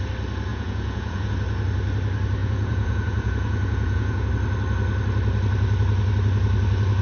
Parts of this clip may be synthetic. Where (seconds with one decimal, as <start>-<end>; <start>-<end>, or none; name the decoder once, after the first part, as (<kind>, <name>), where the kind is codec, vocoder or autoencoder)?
0.5-1.3 (vocoder, Vocos); 2.4-4.3